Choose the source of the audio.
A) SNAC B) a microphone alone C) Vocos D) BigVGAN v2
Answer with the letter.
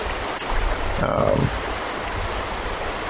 B